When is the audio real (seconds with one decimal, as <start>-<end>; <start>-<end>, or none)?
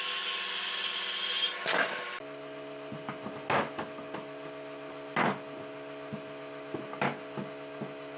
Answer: 0.0-8.2